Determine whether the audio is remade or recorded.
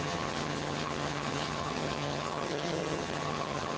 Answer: remade